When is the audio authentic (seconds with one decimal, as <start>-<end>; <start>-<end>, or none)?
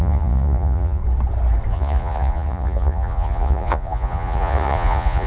1.0-1.7